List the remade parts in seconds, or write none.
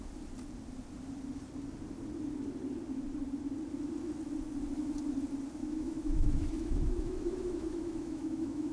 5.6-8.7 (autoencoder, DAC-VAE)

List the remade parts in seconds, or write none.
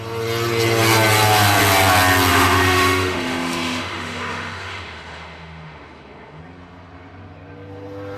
2.3-6.4 (autoencoder, DAC-VAE)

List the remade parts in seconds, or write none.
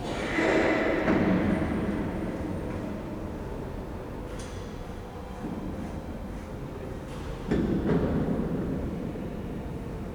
none